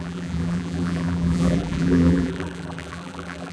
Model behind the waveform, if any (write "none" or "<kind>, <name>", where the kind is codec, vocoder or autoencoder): vocoder, BigVGAN v2